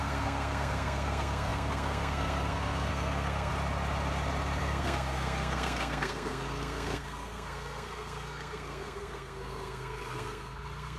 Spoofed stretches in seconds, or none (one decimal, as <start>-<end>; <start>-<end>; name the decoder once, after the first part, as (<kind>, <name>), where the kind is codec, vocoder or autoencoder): 0.0-3.5 (codec, SNAC); 4.6-11.0